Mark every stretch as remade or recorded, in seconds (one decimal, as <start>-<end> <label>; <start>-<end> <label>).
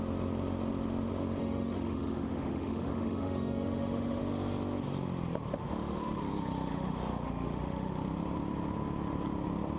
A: 0.0-1.4 recorded; 1.4-4.2 remade; 4.2-5.5 recorded; 5.5-6.2 remade; 6.2-6.7 recorded; 6.7-7.9 remade; 7.9-9.8 recorded